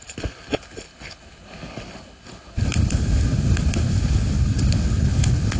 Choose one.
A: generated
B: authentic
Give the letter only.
A